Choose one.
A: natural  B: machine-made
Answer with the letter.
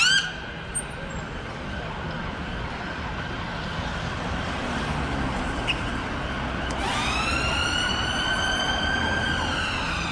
A